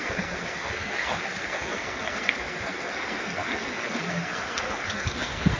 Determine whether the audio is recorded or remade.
remade